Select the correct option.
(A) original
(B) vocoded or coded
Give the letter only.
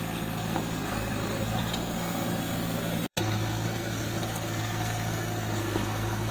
B